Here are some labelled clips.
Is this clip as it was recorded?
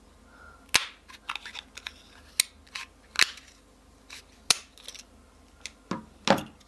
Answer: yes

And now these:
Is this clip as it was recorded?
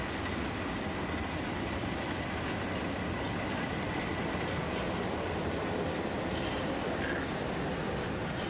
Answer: yes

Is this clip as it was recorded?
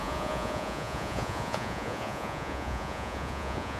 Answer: no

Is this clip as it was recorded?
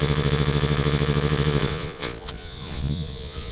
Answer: no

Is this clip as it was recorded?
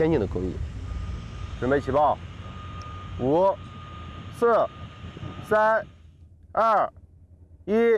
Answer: yes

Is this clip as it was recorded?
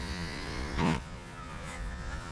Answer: no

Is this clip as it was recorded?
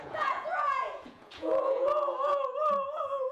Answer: no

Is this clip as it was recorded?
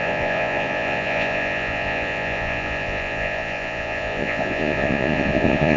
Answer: no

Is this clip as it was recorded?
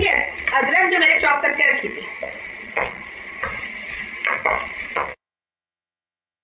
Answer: no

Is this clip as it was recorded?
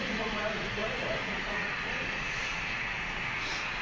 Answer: no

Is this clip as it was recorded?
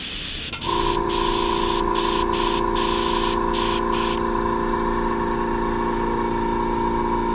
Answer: yes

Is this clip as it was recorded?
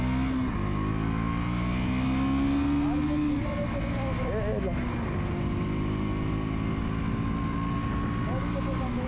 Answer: yes